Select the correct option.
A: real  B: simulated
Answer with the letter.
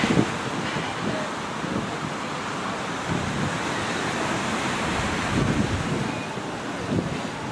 A